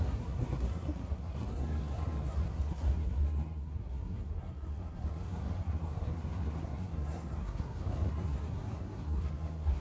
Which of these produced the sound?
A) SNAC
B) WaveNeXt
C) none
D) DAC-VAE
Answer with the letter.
A